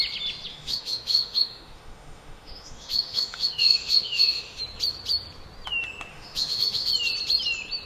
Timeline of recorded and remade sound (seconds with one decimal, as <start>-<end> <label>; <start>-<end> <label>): 0.0-0.5 recorded; 0.5-4.6 remade; 4.6-6.1 recorded; 6.1-6.9 remade; 6.9-7.9 recorded